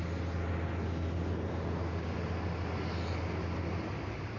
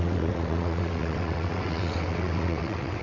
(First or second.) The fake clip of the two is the second